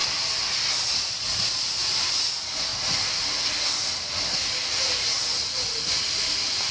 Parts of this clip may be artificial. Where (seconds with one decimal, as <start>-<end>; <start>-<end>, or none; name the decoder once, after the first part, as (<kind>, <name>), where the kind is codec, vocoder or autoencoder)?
0.9-2.7 (vocoder, BigVGAN v2); 5.3-6.7